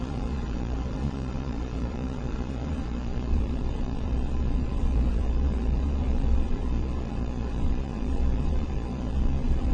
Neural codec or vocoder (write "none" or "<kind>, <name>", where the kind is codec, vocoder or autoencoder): vocoder, Vocos